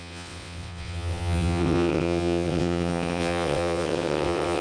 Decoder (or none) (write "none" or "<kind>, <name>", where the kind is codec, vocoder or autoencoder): vocoder, WaveNeXt